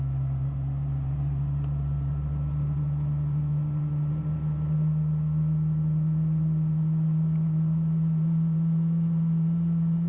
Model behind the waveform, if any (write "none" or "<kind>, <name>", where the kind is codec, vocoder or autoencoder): none